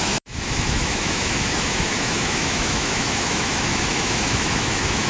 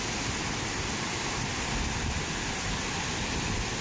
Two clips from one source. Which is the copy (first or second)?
first